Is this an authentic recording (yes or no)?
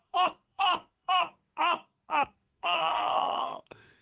no